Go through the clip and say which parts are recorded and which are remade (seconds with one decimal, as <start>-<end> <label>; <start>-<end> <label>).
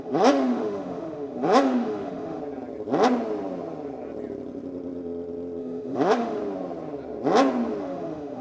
0.0-2.4 remade; 2.4-5.6 recorded; 5.6-6.4 remade; 6.4-7.8 recorded; 7.8-8.4 remade